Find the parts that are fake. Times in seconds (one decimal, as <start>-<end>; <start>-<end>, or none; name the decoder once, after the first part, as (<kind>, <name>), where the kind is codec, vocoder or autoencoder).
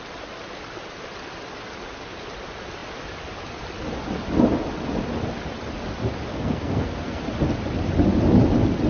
6.3-7.2 (codec, SNAC)